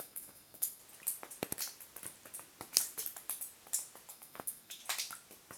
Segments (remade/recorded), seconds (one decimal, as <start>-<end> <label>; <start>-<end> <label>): 0.0-0.8 remade; 0.8-4.1 recorded; 4.1-4.8 remade; 4.8-5.6 recorded